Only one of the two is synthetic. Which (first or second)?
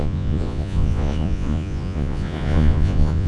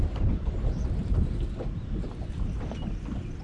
first